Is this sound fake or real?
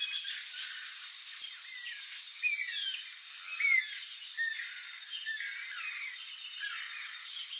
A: real